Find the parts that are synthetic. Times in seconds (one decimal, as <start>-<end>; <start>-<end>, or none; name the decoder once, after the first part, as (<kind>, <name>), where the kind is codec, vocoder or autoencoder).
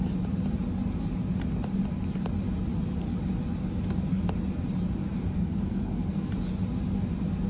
5.4-6.3 (codec, SNAC)